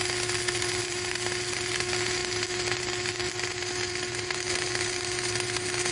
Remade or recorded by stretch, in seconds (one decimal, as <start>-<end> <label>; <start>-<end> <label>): 0.0-5.9 recorded